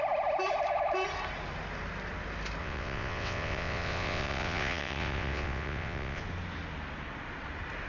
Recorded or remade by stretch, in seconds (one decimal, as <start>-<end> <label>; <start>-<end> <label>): 0.0-2.6 recorded; 2.6-6.2 remade; 6.2-7.9 recorded